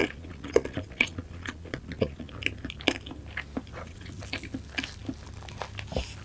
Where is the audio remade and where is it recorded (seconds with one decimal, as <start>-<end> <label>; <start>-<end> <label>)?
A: 0.0-2.3 remade; 2.3-3.7 recorded; 3.7-4.2 remade; 4.2-6.2 recorded